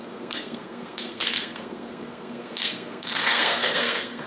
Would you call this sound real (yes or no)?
no